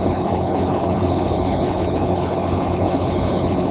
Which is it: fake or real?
fake